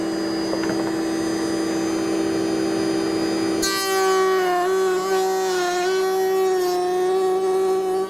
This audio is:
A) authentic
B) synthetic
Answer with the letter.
A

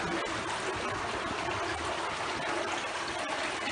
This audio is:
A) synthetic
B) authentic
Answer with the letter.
B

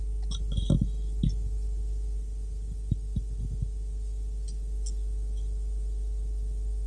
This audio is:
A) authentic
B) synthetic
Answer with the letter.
A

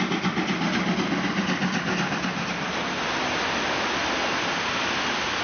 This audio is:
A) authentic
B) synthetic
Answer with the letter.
A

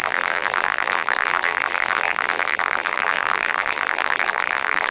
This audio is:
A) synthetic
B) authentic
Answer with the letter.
A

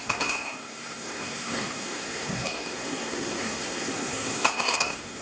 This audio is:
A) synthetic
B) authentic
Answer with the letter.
A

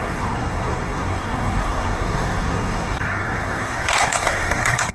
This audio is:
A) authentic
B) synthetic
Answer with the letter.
B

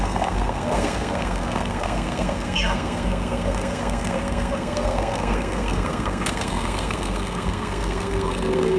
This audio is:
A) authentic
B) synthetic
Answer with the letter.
B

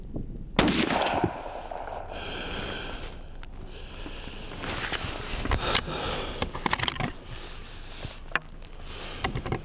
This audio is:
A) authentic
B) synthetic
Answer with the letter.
A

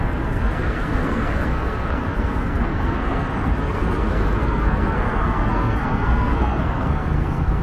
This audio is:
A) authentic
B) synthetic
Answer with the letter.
B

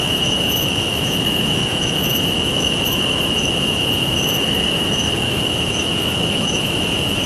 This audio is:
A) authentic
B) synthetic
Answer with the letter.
B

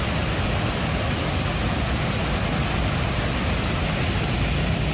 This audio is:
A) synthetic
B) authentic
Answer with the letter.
B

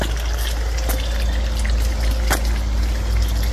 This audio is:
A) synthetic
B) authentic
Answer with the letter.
B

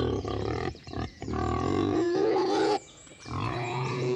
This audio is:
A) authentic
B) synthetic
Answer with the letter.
B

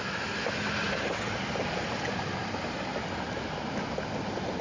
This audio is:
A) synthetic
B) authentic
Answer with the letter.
B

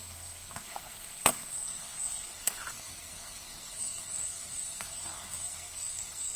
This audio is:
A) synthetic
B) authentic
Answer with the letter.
A